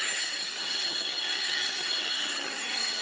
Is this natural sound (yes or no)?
no